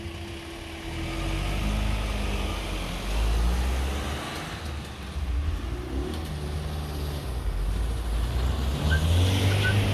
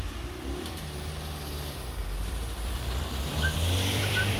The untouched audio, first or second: first